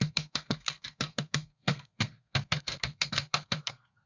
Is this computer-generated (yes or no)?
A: yes